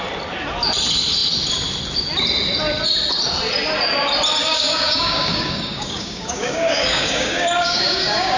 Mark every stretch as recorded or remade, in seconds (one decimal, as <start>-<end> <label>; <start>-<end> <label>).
0.0-4.4 recorded; 4.4-8.4 remade